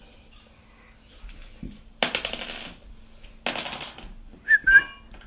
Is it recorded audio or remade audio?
recorded